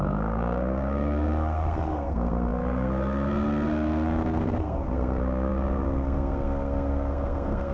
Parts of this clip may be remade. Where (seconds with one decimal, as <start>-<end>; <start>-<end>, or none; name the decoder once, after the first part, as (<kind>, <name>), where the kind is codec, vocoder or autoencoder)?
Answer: 0.0-7.7 (codec, SNAC)